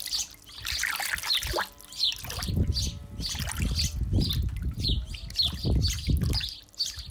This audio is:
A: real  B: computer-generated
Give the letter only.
A